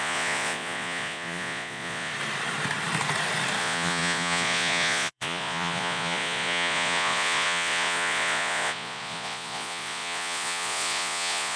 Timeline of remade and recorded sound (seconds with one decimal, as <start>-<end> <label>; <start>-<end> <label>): 0.0-2.1 remade; 2.1-3.6 recorded; 3.6-11.6 remade